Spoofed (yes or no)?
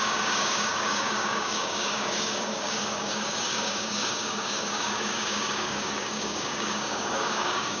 yes